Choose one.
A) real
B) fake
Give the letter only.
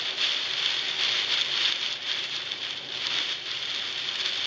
A